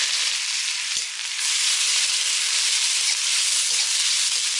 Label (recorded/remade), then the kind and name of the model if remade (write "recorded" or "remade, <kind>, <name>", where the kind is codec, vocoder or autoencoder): recorded